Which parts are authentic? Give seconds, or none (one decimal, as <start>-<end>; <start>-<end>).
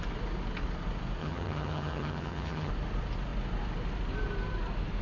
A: 0.0-1.2; 2.7-5.0